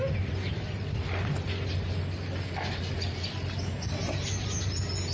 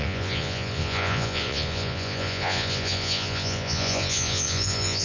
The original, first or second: first